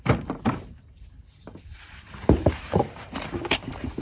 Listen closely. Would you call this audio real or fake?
fake